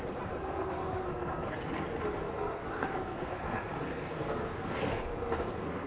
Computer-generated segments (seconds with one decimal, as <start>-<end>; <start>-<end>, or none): 0.4-1.5; 2.2-5.9